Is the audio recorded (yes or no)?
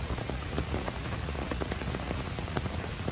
no